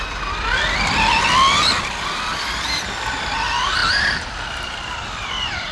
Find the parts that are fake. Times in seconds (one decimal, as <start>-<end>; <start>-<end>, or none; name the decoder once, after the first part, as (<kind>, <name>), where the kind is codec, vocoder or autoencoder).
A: 0.0-5.7 (vocoder, BigVGAN v2)